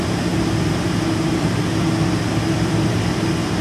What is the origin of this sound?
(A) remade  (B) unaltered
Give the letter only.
B